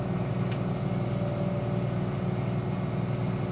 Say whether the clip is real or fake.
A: real